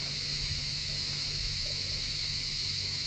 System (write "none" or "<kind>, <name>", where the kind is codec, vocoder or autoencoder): autoencoder, DAC-VAE